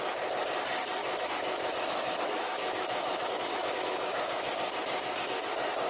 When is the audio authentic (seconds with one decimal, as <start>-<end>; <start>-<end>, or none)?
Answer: 0.0-1.0; 4.5-5.9